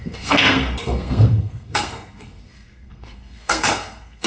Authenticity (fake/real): fake